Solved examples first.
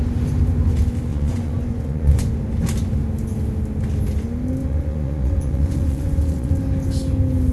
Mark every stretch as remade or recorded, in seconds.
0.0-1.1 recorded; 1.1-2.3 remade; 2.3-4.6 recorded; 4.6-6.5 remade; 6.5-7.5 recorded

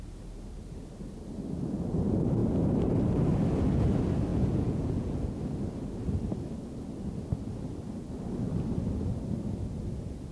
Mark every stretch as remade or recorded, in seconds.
0.0-4.3 recorded; 4.3-5.4 remade; 5.4-10.3 recorded

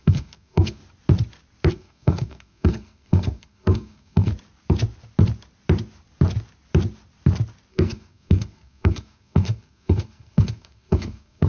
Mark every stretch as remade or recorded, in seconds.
0.0-0.8 remade; 0.8-1.7 recorded; 1.7-4.3 remade; 4.3-7.7 recorded; 7.7-11.5 remade